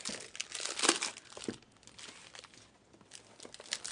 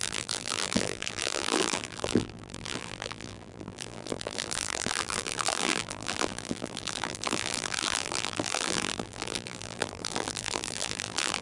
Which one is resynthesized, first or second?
second